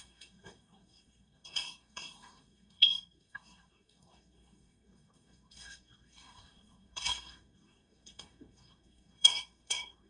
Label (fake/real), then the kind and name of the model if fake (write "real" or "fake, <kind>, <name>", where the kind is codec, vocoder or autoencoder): fake, codec, SNAC